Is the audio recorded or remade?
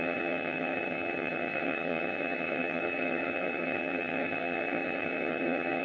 remade